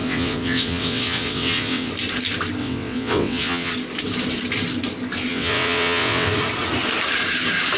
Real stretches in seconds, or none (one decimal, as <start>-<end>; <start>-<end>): 1.9-2.6; 3.7-5.3; 6.3-7.8